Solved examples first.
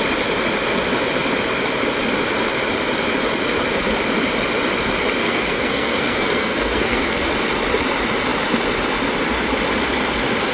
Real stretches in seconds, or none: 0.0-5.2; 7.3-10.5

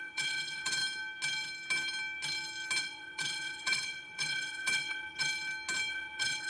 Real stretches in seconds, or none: 0.8-2.8; 5.3-5.9

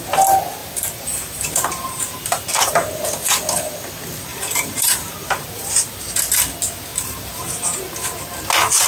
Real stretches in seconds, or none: 0.0-0.6; 2.9-4.3; 5.7-6.9; 7.8-8.9

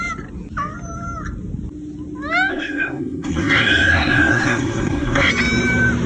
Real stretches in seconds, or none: 0.0-2.5; 5.3-6.1